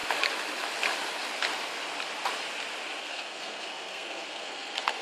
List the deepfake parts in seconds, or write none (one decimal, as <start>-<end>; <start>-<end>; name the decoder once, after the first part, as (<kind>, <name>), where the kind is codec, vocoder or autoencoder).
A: 3.0-5.0 (codec, SNAC)